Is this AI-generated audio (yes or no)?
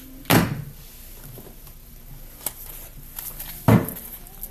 no